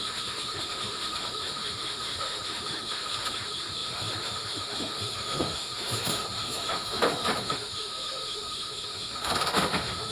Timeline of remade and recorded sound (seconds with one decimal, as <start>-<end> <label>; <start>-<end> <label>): 0.0-10.1 remade